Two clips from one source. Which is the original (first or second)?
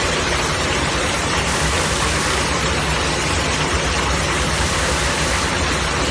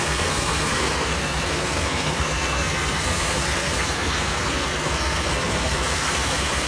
first